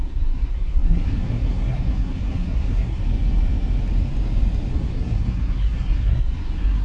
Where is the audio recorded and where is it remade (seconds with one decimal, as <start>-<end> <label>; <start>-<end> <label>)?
0.0-3.0 remade; 3.0-4.7 recorded; 4.7-6.8 remade